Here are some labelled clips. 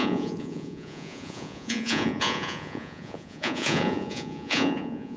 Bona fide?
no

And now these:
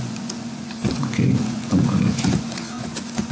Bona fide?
no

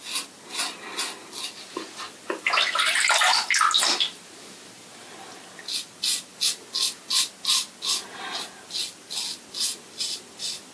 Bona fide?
yes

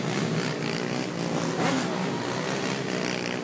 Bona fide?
yes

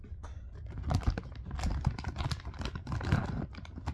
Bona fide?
yes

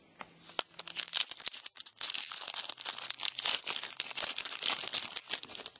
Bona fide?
yes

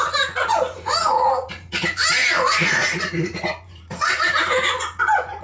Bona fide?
no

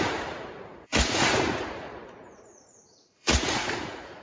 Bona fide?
no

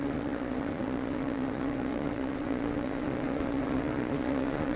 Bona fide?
no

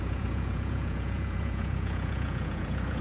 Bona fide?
no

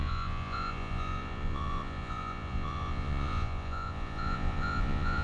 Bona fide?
no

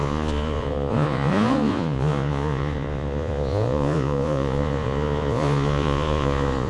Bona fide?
no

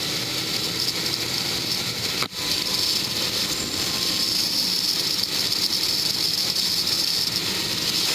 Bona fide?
yes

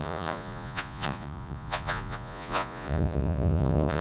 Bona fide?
no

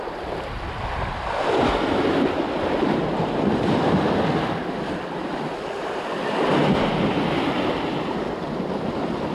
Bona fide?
yes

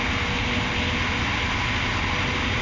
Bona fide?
yes